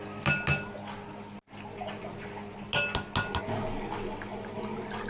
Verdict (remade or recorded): recorded